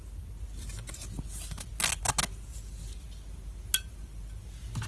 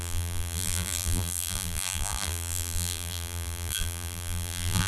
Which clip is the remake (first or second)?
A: second